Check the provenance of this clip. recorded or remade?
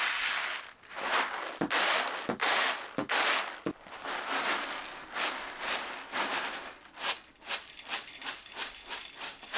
recorded